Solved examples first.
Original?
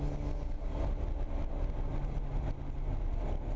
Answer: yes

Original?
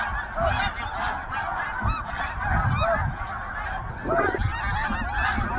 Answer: yes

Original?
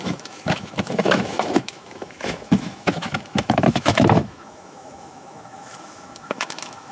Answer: no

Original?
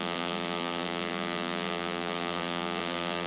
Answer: no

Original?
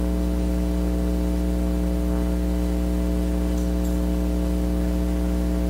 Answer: yes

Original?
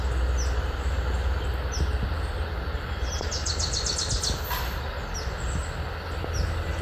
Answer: yes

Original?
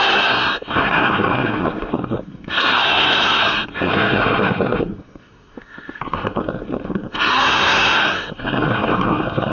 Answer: no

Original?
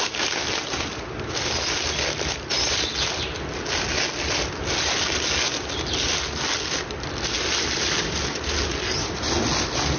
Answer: yes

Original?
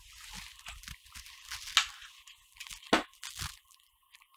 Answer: yes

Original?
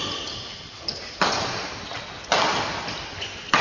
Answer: yes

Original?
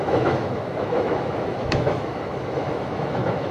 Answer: no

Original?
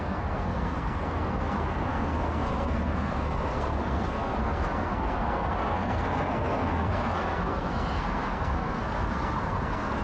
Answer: no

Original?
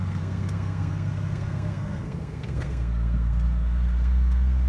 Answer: no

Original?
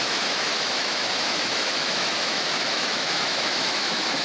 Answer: no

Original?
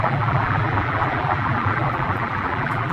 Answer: no